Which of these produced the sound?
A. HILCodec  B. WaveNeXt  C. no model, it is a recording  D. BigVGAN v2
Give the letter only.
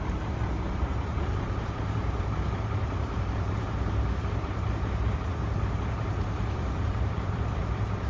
D